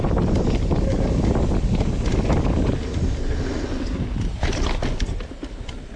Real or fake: real